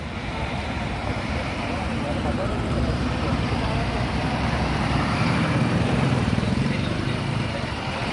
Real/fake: fake